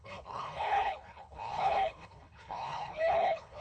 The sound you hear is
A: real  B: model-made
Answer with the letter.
B